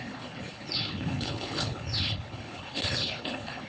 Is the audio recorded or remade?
remade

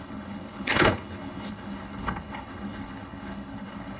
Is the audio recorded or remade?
remade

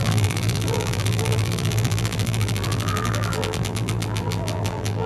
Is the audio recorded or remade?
remade